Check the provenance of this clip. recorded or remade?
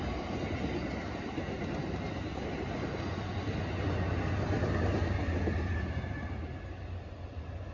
recorded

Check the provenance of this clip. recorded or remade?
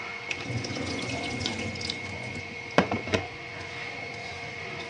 remade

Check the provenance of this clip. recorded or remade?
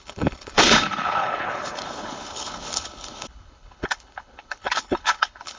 remade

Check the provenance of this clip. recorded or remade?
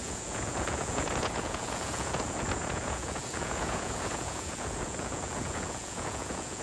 remade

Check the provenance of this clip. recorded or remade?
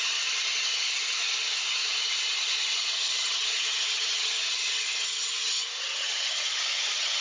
remade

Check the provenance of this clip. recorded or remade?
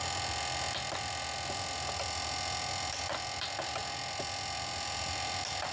recorded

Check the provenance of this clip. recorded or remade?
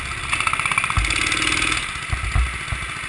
recorded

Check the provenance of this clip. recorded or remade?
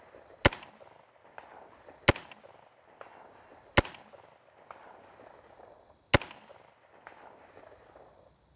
recorded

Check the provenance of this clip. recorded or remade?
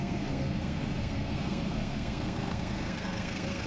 remade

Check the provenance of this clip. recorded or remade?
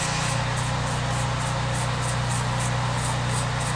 recorded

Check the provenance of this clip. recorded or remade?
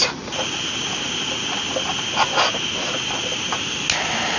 recorded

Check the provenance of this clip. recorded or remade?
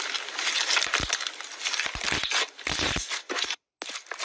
recorded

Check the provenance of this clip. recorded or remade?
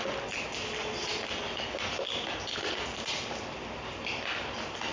recorded